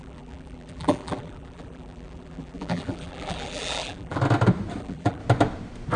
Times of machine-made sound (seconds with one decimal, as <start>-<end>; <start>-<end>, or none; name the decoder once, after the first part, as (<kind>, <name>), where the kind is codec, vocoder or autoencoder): 0.0-4.2 (vocoder, BigVGAN v2); 4.8-5.2